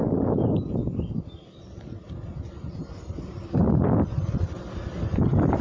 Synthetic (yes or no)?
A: no